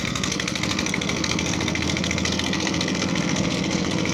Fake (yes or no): yes